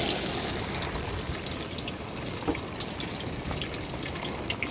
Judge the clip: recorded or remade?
recorded